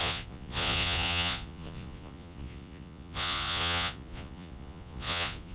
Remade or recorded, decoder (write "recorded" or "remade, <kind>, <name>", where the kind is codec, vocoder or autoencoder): remade, vocoder, Vocos